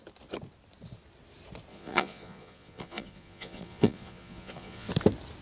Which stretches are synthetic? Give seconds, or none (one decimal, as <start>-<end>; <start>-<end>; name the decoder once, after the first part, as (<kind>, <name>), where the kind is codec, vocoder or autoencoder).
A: 1.7-4.9 (vocoder, Vocos)